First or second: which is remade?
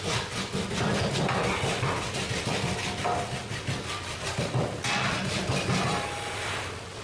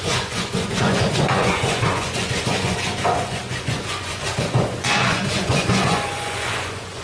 second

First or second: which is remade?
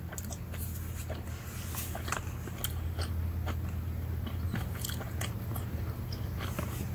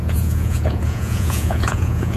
second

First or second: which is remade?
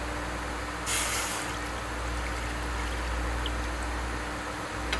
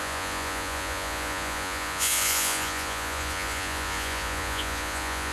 second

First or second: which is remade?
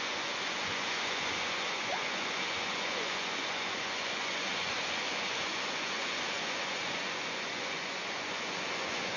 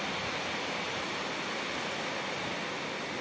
first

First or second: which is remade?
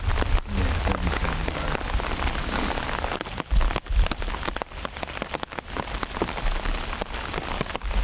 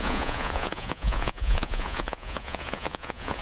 second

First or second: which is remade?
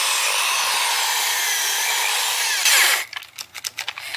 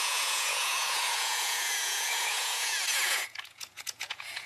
second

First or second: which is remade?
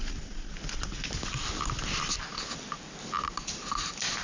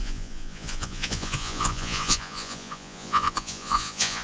second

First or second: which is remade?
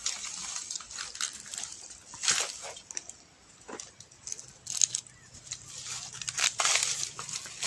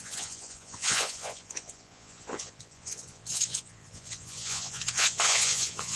second